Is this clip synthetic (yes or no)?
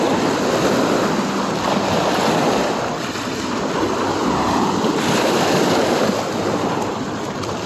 no